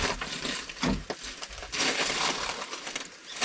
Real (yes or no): yes